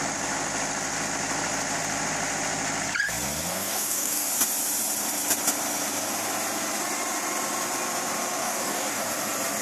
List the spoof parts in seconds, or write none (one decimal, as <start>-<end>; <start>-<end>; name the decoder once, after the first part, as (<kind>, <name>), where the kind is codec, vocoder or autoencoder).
3.5-4.3 (codec, DAC); 8.4-9.1